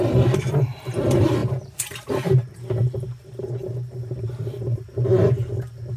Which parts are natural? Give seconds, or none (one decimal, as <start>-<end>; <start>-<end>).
none